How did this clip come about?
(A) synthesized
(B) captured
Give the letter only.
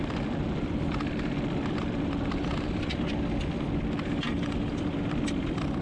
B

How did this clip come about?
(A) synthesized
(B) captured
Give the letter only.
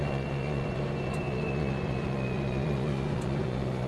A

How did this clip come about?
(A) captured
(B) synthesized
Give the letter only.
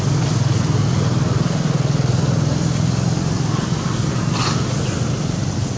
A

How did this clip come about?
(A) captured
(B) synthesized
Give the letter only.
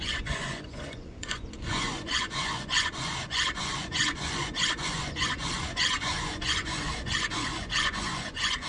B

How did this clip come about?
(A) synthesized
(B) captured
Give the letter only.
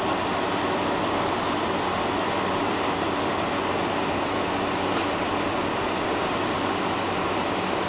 B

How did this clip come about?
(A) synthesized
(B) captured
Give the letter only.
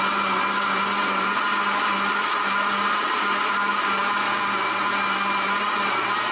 B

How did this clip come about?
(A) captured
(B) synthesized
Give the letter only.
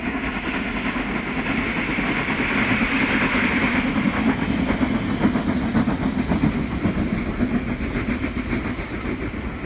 A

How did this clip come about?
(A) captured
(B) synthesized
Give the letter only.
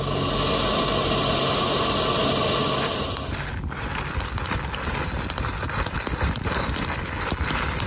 A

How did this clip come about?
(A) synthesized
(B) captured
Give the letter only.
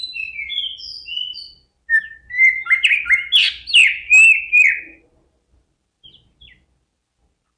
B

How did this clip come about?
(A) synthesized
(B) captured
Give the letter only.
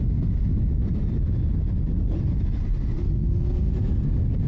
B